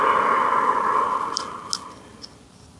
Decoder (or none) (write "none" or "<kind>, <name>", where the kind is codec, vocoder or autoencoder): none